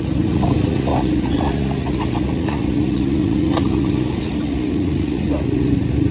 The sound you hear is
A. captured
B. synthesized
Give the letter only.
B